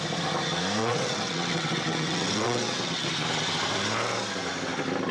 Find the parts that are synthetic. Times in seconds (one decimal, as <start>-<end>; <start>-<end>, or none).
0.8-3.1